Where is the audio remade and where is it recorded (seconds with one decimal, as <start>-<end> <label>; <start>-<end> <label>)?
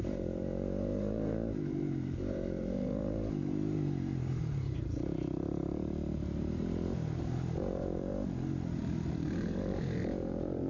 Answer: 0.0-8.1 remade; 8.1-8.8 recorded; 8.8-10.7 remade